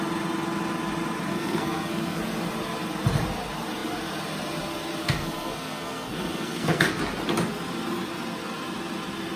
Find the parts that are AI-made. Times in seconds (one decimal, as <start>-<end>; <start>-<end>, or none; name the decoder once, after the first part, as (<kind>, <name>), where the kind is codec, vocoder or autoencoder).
1.3-2.2 (codec, SNAC); 5.0-7.0